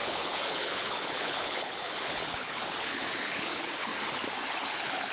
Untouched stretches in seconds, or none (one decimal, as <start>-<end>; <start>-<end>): 3.9-4.5